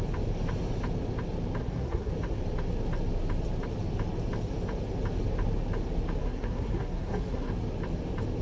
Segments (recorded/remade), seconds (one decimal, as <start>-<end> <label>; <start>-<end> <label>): 0.0-1.6 recorded; 1.6-2.1 remade; 2.1-6.2 recorded; 6.2-7.5 remade; 7.5-8.4 recorded